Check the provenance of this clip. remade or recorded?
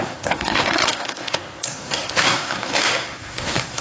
remade